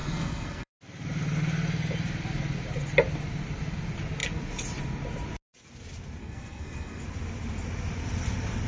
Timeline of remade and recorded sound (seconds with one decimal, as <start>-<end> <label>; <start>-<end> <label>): 0.0-0.7 remade; 0.7-6.2 recorded; 6.2-7.0 remade; 7.0-8.7 recorded